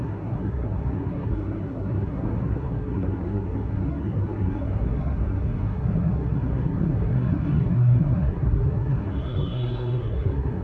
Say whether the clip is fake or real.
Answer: fake